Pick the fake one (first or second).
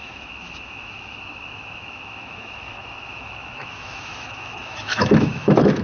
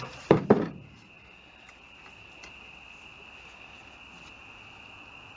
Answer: first